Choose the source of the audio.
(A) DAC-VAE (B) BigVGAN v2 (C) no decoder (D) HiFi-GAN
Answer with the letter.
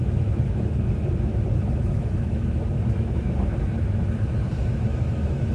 A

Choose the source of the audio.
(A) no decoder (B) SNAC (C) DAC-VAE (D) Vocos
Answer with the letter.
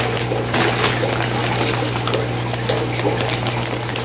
A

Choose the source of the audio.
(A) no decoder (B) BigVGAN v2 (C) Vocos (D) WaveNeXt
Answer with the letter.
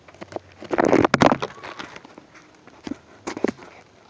A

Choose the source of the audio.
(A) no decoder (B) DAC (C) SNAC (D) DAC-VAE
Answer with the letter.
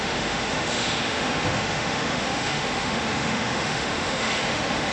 D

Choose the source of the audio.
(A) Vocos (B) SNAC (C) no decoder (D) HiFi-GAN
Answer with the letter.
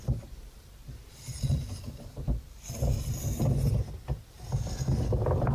C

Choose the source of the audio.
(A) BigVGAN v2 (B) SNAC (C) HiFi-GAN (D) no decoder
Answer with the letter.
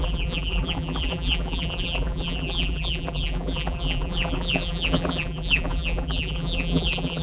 A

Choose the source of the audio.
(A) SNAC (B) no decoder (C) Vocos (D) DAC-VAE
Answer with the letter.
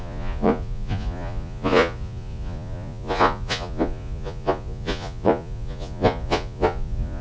C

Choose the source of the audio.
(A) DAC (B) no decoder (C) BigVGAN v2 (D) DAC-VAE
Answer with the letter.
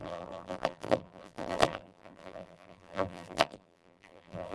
C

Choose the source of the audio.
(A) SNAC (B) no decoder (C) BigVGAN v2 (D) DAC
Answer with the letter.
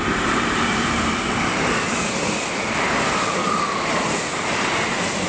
C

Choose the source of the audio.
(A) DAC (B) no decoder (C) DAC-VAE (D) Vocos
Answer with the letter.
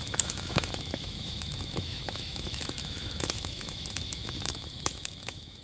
C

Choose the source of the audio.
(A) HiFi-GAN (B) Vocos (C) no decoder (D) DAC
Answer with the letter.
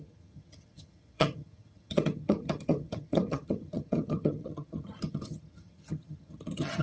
A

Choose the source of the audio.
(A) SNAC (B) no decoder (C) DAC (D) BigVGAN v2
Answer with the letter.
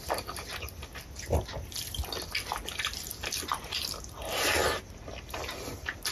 B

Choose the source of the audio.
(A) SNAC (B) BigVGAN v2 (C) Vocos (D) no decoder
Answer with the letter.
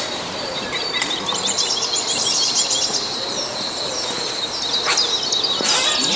D